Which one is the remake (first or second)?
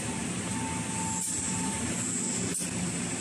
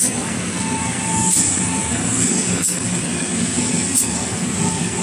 second